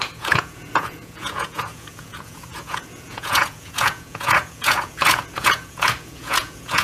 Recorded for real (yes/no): no